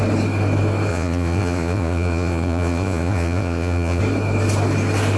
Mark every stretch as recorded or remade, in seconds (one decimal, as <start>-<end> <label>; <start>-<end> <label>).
0.0-0.9 recorded; 0.9-4.0 remade; 4.0-5.2 recorded

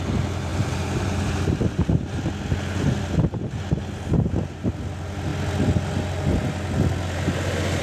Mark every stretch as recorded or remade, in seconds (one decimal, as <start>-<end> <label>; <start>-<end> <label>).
0.0-0.5 recorded; 0.5-2.2 remade; 2.2-7.8 recorded

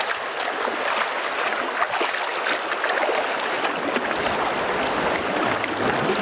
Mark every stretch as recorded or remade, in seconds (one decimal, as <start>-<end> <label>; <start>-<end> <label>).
0.0-6.2 recorded

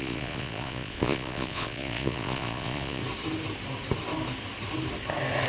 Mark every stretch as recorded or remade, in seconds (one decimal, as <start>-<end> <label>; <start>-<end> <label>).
0.0-3.0 remade; 3.0-5.5 recorded